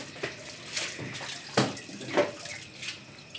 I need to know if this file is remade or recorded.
recorded